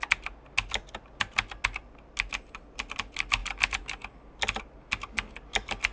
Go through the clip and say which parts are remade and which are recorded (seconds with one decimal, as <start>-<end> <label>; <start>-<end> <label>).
0.0-5.9 recorded